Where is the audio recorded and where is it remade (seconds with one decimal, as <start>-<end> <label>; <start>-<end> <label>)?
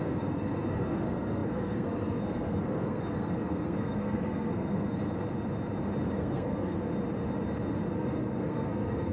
0.0-5.0 remade; 5.0-6.2 recorded; 6.2-6.9 remade; 6.9-7.9 recorded; 7.9-9.1 remade